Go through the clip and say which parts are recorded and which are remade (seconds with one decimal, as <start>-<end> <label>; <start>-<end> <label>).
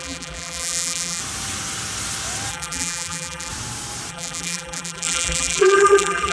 0.0-1.2 remade; 1.2-2.5 recorded; 2.5-3.5 remade; 3.5-4.1 recorded; 4.1-6.3 remade